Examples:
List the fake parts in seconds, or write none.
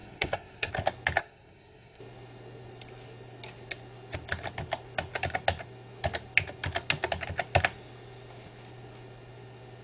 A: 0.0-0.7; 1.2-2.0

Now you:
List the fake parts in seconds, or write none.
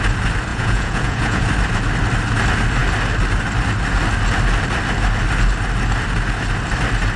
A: 0.5-1.4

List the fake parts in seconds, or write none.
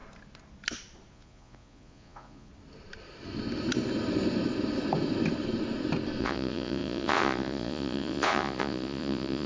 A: 1.1-2.5; 6.2-9.5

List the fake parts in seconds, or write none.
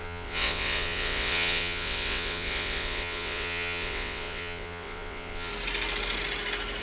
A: 0.0-5.5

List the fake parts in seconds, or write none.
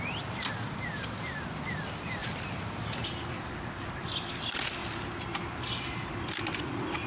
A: 0.0-4.8; 6.2-7.1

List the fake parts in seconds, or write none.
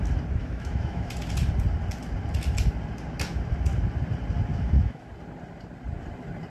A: 0.4-1.1; 4.5-5.1